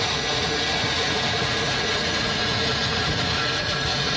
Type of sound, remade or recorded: remade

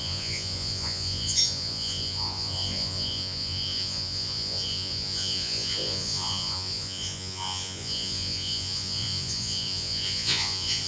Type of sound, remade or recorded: remade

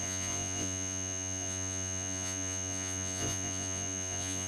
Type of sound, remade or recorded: remade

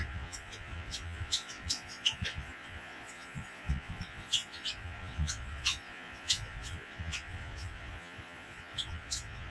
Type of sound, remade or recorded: remade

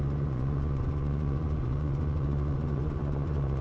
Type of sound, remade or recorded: remade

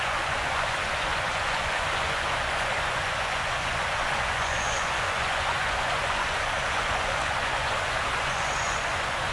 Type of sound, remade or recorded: remade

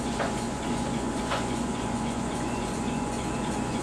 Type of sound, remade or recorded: remade